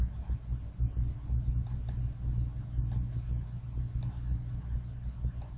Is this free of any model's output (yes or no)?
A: yes